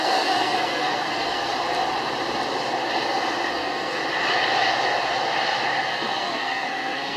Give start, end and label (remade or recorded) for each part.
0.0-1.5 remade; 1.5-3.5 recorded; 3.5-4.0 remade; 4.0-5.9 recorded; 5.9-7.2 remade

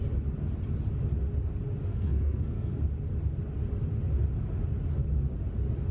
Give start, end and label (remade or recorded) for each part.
0.0-1.9 recorded; 1.9-2.7 remade; 2.7-5.9 recorded

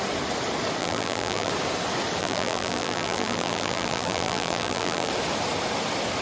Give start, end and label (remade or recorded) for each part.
0.0-0.8 recorded; 0.8-1.5 remade; 1.5-2.2 recorded; 2.2-5.1 remade; 5.1-6.2 recorded

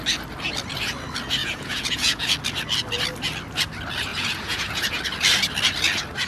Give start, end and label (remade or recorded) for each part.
0.0-1.4 recorded; 1.4-2.3 remade; 2.3-4.1 recorded; 4.1-5.0 remade; 5.0-6.3 recorded

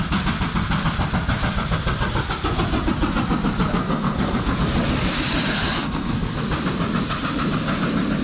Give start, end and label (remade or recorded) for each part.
0.0-3.8 recorded; 3.8-4.5 remade; 4.5-5.8 recorded; 5.8-6.4 remade; 6.4-8.2 recorded

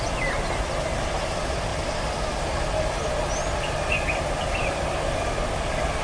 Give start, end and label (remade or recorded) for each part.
0.0-6.0 recorded

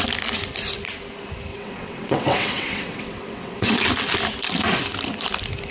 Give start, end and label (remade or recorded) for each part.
0.0-1.5 recorded; 1.5-3.8 remade; 3.8-5.7 recorded

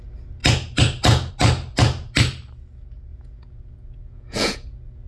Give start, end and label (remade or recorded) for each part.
0.0-3.1 recorded; 3.1-5.1 remade